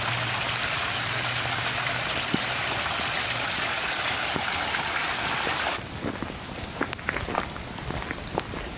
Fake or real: real